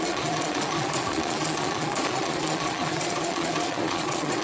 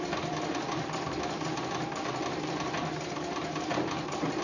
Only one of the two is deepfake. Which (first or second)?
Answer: first